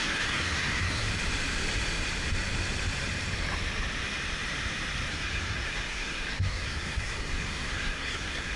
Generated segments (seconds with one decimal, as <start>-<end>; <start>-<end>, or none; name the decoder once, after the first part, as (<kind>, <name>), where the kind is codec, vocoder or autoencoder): 0.0-1.1 (codec, SNAC); 5.1-8.6

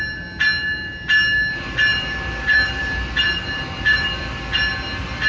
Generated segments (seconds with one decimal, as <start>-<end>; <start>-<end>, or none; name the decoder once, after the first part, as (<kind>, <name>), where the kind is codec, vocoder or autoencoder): 1.9-4.4 (vocoder, BigVGAN v2)

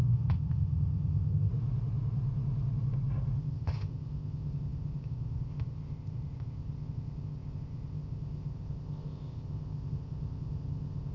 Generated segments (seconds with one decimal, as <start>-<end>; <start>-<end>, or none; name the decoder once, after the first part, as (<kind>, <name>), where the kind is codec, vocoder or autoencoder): 0.0-1.5 (codec, ZipCodec); 3.4-11.1